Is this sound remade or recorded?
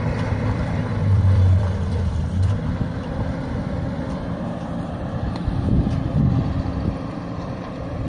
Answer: remade